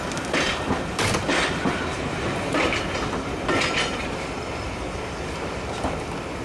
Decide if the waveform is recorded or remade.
recorded